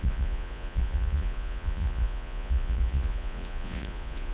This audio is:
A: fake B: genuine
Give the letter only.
A